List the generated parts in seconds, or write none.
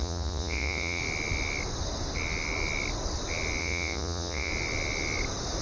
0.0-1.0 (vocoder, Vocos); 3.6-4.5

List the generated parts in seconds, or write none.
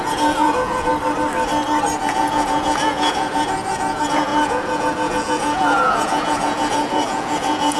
0.0-0.9 (vocoder, Vocos); 2.0-7.8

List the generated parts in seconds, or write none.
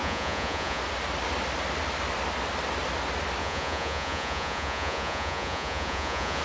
0.0-0.8 (vocoder, Vocos); 3.4-6.4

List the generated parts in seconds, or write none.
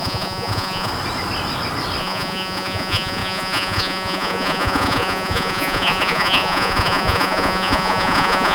0.0-0.9 (vocoder, Vocos); 2.0-8.5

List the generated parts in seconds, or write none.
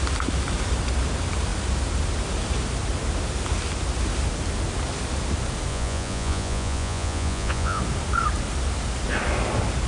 5.7-7.8 (vocoder, Vocos)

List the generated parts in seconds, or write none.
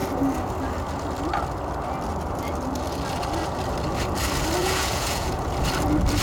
4.6-5.4 (vocoder, Vocos)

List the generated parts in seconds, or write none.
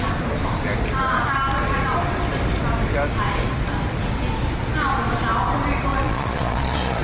5.9-7.0 (vocoder, Vocos)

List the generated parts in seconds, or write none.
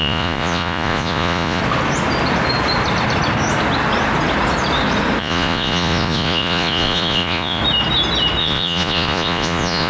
0.0-1.6 (vocoder, Vocos); 5.2-7.6; 8.4-9.9